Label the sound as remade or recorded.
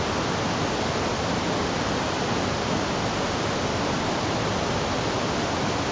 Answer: recorded